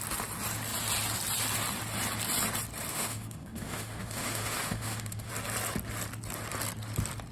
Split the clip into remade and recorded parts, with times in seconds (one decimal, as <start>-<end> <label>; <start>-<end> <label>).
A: 0.0-2.9 recorded; 2.9-5.3 remade; 5.3-7.3 recorded